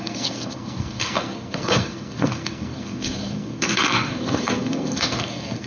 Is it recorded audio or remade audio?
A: remade